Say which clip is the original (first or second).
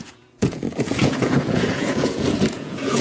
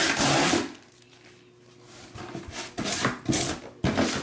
second